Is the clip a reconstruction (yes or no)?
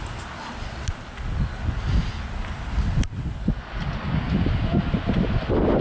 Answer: no